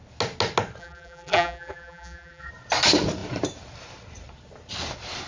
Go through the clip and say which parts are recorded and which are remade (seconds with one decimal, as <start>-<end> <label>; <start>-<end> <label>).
0.0-0.8 recorded; 0.8-2.5 remade; 2.5-5.3 recorded